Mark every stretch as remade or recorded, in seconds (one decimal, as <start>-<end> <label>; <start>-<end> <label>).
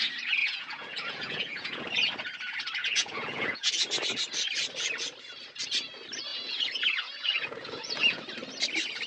0.0-0.4 recorded; 0.4-1.8 remade; 1.8-2.8 recorded; 2.8-3.7 remade; 3.7-6.3 recorded; 6.3-8.2 remade; 8.2-9.1 recorded